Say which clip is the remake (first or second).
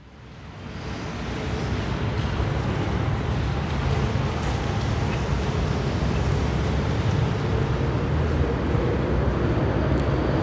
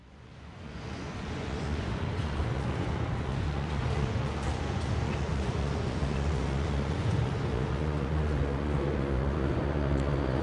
second